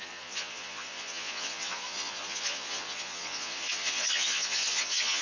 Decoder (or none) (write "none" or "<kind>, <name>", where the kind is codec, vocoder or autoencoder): vocoder, Vocos